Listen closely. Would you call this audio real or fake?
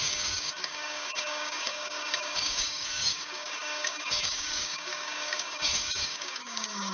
fake